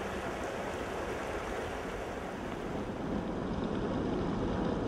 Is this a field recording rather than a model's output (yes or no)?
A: yes